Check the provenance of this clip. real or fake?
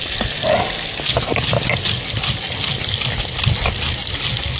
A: real